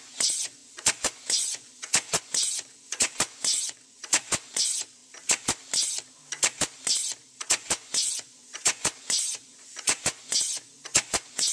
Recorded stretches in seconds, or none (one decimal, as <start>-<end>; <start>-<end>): 5.0-7.4